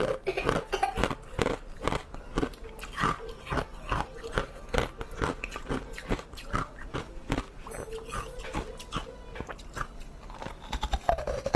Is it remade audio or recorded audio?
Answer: recorded